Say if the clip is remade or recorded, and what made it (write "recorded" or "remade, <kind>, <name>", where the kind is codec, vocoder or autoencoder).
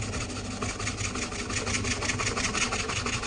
recorded